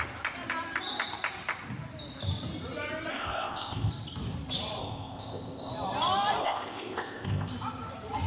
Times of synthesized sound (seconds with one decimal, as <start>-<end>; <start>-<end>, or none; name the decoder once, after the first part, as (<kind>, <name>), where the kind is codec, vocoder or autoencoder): 3.1-3.9 (codec, ZipCodec); 4.8-5.7; 6.4-7.5